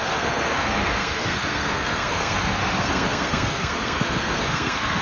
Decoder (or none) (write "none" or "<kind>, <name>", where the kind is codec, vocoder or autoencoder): codec, SNAC